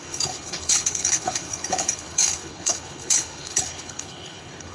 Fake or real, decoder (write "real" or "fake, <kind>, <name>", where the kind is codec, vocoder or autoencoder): fake, codec, HILCodec